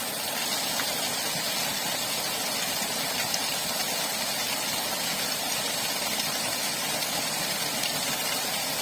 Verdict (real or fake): real